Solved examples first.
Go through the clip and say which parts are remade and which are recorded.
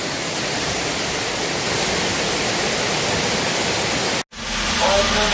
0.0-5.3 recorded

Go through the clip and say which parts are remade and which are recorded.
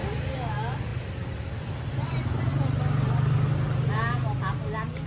0.0-5.1 recorded